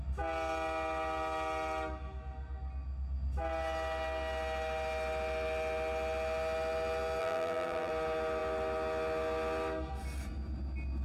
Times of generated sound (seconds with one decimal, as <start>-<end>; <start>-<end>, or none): 7.2-7.9